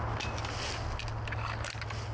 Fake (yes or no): no